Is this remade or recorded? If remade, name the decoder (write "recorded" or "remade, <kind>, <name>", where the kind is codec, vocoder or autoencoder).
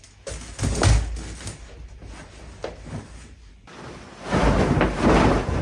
recorded